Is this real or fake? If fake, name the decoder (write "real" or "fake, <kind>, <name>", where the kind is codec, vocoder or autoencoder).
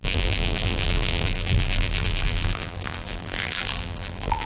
fake, vocoder, BigVGAN v2